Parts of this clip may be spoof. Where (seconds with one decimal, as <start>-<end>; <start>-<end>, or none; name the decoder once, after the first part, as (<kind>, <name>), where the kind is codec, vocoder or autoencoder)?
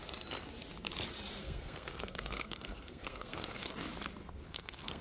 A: 1.4-3.7 (codec, SNAC); 4.2-5.0